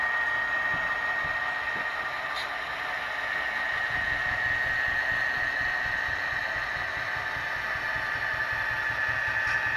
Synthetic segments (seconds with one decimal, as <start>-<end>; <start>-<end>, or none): none